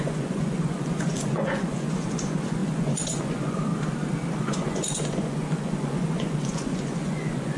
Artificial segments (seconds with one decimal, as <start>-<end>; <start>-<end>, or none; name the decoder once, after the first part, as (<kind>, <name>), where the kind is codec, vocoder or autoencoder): 0.0-3.7 (vocoder, Vocos); 4.4-7.6